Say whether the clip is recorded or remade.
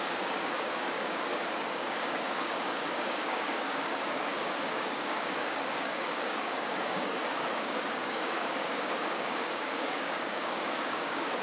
remade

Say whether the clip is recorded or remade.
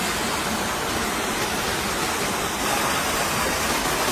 recorded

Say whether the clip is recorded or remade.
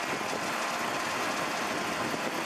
recorded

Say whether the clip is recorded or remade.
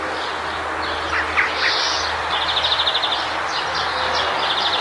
recorded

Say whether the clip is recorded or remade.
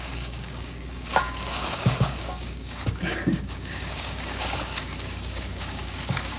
remade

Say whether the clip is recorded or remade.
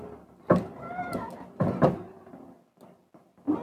recorded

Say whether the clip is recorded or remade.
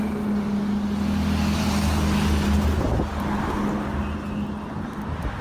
recorded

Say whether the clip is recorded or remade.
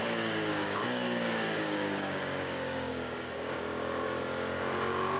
remade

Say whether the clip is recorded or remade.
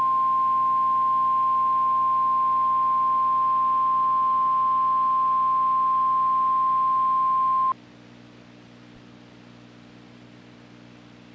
recorded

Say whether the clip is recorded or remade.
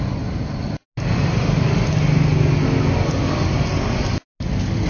recorded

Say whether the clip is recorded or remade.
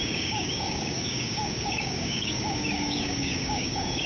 remade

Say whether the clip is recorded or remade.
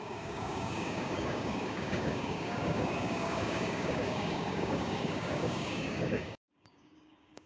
remade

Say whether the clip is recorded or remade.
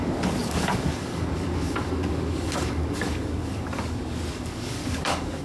remade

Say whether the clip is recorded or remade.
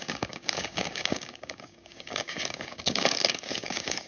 remade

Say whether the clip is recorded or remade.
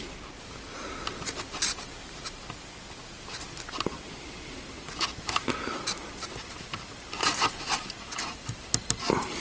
recorded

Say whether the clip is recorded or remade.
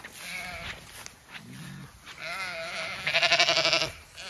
recorded